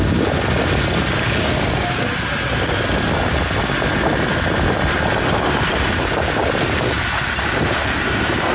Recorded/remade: recorded